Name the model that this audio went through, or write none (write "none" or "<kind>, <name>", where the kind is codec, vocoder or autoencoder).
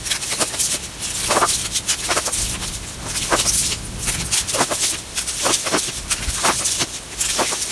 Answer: vocoder, BigVGAN v2